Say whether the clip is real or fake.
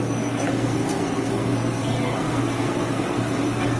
fake